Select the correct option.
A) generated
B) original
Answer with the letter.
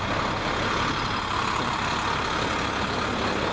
B